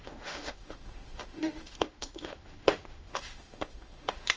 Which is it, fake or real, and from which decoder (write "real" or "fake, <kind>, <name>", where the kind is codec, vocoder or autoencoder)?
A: fake, autoencoder, DAC-VAE